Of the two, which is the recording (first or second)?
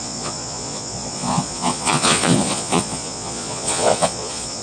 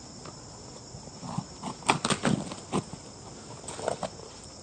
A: second